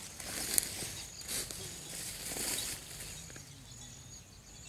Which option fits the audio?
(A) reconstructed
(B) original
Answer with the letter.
B